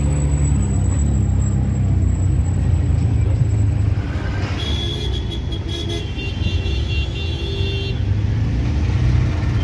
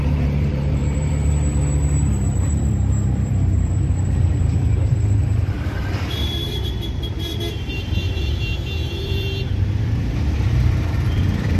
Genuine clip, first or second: first